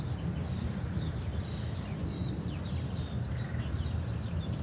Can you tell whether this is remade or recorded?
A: recorded